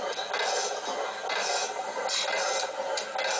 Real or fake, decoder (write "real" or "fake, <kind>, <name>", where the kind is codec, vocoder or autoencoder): real